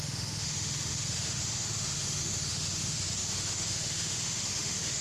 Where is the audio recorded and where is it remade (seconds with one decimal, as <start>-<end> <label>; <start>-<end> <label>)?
0.0-5.0 remade